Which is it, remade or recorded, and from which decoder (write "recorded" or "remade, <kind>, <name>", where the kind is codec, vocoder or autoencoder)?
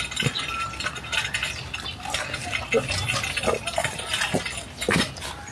recorded